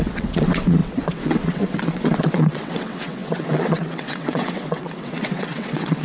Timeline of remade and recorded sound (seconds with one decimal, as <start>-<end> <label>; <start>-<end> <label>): 0.0-6.0 remade